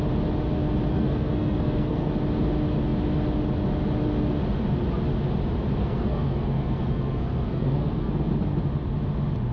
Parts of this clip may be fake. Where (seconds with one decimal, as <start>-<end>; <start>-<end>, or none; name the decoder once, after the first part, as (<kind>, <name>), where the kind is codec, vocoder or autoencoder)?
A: 0.9-2.1 (codec, SNAC); 5.8-8.1

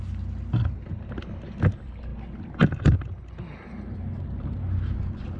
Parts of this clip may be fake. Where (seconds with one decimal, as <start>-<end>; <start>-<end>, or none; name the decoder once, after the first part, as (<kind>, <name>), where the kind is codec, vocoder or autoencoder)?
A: none

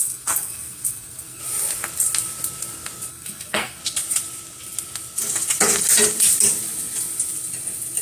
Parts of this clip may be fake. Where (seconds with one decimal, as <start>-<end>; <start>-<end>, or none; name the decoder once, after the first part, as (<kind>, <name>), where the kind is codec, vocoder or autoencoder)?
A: 0.0-1.4 (codec, SNAC); 3.1-3.8

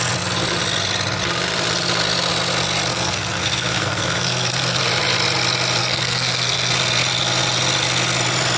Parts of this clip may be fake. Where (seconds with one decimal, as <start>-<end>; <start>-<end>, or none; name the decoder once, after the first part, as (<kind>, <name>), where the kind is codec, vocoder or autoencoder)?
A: 2.9-4.8 (codec, SNAC); 5.8-6.7

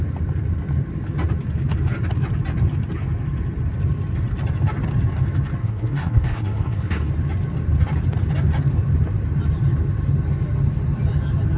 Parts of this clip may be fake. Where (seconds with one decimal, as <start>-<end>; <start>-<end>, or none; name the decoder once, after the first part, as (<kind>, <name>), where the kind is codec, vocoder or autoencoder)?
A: 5.6-7.1 (codec, SNAC)